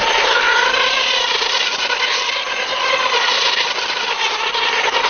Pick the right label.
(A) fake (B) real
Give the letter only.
B